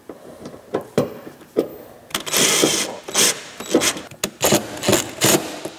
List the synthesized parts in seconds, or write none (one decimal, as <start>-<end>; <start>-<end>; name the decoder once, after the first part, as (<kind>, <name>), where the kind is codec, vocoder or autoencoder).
0.0-1.7 (vocoder, BigVGAN v2); 5.2-5.8